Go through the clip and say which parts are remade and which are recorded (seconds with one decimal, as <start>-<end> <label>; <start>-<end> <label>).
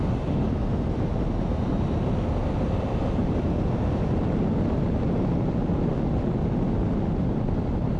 0.0-8.0 recorded